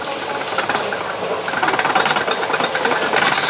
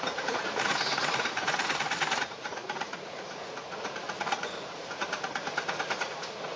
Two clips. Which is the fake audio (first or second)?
second